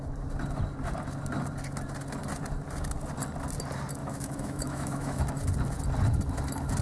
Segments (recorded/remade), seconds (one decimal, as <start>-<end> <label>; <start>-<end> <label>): 0.0-4.0 recorded; 4.0-5.2 remade; 5.2-6.8 recorded